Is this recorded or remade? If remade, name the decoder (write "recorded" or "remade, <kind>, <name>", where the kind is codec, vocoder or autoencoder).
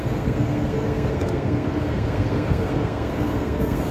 remade, codec, SNAC